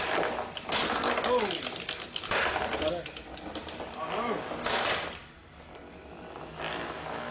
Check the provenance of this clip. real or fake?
real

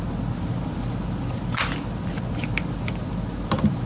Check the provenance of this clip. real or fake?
real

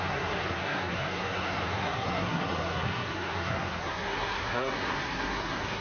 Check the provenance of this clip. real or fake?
fake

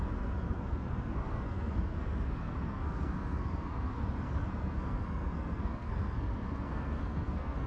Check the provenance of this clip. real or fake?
fake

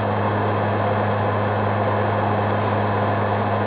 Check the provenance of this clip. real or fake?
real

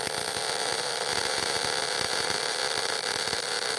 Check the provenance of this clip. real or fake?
real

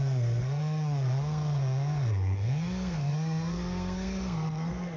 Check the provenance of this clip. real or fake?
fake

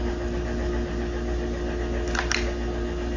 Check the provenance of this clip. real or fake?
real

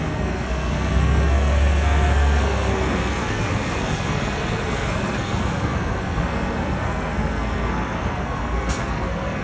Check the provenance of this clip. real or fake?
fake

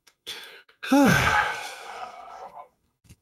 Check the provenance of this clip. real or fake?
fake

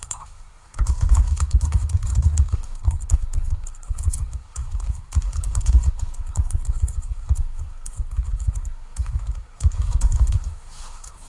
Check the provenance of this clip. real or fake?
fake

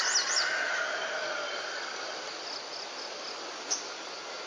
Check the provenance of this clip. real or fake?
real